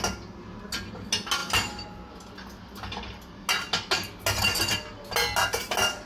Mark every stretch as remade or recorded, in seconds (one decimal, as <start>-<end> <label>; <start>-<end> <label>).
0.0-6.1 recorded